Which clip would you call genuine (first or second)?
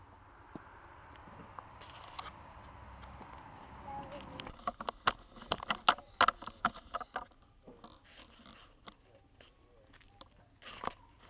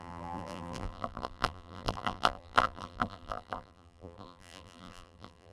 first